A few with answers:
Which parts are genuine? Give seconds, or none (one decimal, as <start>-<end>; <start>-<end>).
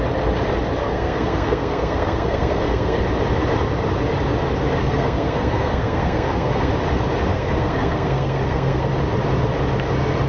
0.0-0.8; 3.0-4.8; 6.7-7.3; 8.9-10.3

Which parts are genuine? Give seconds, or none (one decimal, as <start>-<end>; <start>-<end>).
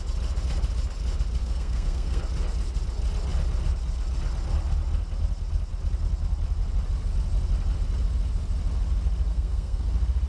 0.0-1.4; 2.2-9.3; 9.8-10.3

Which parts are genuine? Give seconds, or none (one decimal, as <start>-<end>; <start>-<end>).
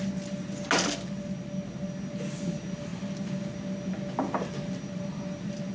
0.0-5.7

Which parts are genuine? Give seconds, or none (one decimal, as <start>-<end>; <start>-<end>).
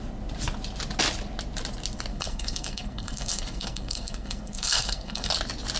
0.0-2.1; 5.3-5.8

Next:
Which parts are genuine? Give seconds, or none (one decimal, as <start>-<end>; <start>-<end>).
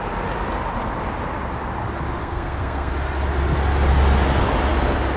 0.0-2.2; 2.9-5.2